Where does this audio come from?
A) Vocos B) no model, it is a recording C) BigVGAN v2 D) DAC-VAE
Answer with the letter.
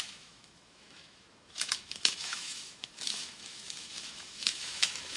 D